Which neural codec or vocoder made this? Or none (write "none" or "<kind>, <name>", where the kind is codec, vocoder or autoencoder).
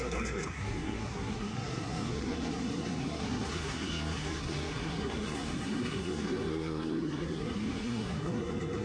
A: codec, SNAC